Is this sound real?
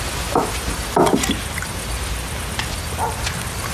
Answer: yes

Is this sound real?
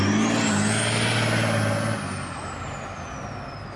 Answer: yes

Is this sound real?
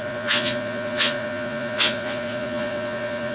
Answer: no